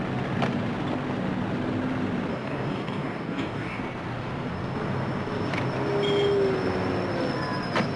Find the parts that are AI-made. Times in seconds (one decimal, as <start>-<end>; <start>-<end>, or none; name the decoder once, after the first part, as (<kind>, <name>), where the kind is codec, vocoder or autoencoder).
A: 2.3-3.8 (codec, DAC)